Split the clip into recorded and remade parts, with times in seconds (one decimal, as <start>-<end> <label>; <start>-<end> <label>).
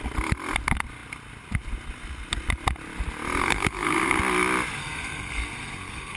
0.0-3.4 recorded; 3.4-4.2 remade; 4.2-4.8 recorded; 4.8-6.2 remade